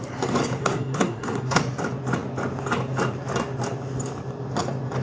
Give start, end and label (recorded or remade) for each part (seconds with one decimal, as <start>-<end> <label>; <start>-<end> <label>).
0.0-0.6 recorded; 0.6-1.6 remade; 1.6-5.0 recorded